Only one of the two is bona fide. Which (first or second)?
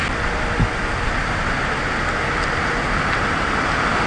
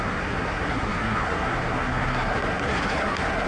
first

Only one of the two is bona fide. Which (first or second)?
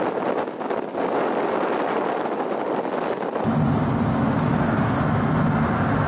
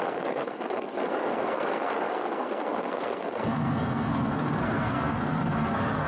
first